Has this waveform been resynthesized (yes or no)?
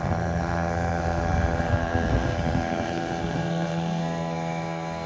yes